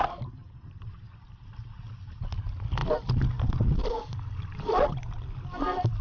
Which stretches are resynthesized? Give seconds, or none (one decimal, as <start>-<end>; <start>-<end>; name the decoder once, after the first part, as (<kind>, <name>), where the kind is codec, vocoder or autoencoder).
none